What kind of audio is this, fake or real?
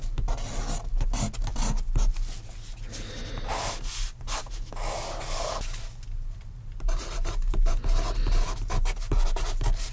real